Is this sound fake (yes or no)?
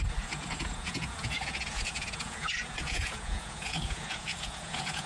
yes